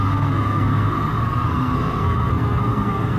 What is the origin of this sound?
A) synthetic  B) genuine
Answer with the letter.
A